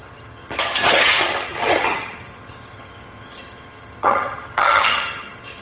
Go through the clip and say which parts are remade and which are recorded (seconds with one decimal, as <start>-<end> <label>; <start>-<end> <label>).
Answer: 0.0-5.6 remade